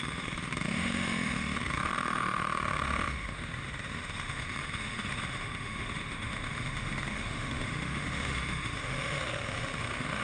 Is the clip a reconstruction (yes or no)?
yes